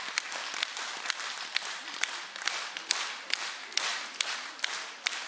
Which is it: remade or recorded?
recorded